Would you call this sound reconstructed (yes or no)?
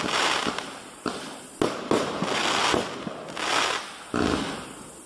no